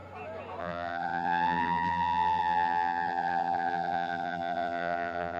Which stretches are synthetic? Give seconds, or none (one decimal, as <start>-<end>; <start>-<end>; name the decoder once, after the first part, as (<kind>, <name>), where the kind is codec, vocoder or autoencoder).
0.6-5.4 (vocoder, BigVGAN v2)